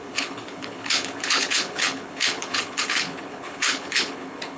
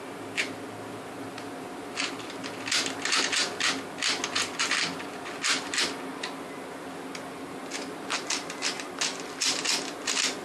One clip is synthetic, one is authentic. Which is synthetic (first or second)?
first